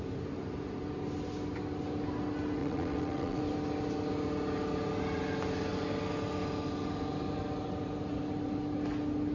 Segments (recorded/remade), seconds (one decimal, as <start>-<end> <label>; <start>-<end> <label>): 0.0-2.6 recorded; 2.6-3.4 remade; 3.4-9.3 recorded